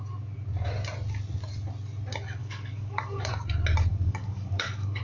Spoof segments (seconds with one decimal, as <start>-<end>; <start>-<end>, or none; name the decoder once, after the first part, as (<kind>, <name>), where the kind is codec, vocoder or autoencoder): 2.4-3.3 (codec, DAC); 3.9-5.0